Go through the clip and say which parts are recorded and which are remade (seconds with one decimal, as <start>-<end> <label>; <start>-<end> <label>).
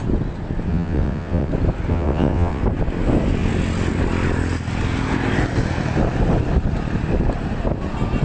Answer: 0.0-0.7 recorded; 0.7-1.5 remade; 1.5-1.9 recorded; 1.9-2.6 remade; 2.6-8.2 recorded